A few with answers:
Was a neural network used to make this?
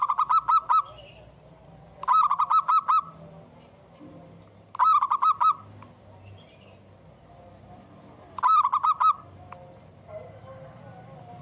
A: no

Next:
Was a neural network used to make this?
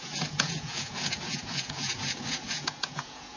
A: yes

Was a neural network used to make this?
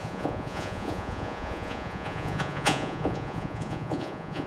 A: yes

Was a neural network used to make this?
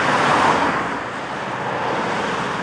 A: no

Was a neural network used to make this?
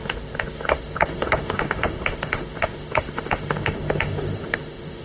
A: yes